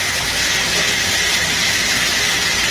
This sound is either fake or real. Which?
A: real